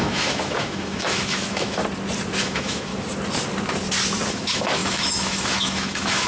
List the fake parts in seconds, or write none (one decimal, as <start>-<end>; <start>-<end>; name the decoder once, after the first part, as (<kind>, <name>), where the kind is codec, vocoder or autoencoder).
0.0-1.8 (autoencoder, DAC-VAE); 2.4-2.9; 4.3-6.3